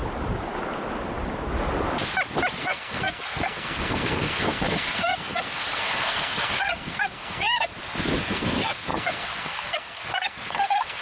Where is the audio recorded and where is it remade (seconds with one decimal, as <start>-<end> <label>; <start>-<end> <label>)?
0.0-2.6 recorded; 2.6-7.7 remade; 7.7-8.2 recorded; 8.2-11.0 remade